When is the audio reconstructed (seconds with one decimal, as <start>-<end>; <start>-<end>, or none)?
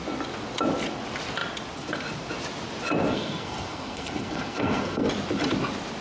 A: 3.1-5.1